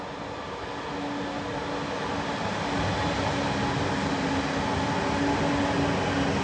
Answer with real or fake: real